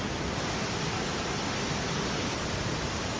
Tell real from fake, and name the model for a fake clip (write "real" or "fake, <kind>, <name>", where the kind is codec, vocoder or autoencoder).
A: real